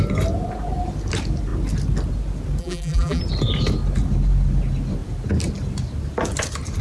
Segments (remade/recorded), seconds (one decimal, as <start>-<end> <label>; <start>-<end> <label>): 0.0-2.6 recorded; 2.6-3.2 remade; 3.2-6.8 recorded